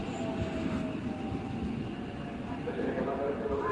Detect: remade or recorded recorded